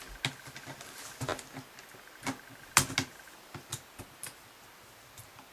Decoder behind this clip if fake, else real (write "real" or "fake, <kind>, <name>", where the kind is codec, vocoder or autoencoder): real